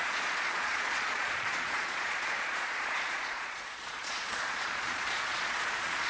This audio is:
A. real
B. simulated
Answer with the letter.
B